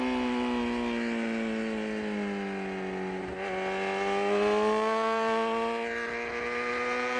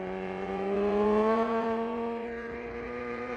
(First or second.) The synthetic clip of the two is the second